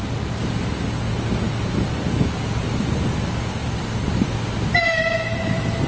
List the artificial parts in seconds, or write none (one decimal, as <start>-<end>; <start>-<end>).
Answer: none